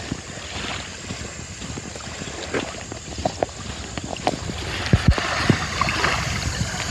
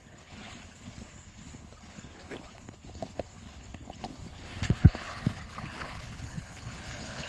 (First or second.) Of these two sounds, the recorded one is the first